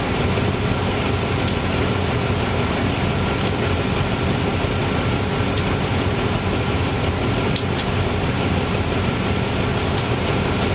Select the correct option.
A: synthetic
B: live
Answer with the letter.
B